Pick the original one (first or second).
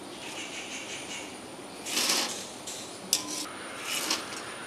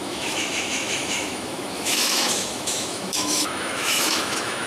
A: first